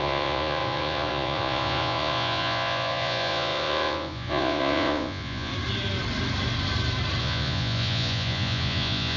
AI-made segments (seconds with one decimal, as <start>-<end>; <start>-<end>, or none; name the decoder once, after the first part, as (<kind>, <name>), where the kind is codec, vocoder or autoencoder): 0.0-5.5 (vocoder, Vocos); 7.2-9.2